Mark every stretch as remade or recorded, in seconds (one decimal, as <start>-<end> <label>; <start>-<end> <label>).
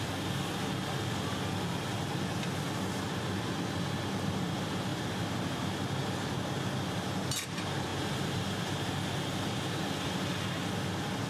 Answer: 0.0-11.3 recorded